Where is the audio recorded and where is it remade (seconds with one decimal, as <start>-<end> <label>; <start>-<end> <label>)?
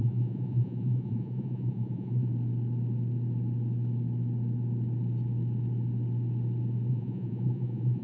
0.0-2.3 remade; 2.3-6.9 recorded; 6.9-8.0 remade